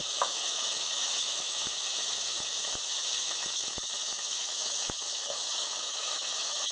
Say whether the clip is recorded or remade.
remade